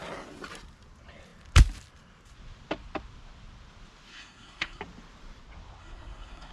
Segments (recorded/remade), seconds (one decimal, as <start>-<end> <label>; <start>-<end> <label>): 0.0-4.1 recorded; 4.1-4.8 remade; 4.8-5.8 recorded; 5.8-6.5 remade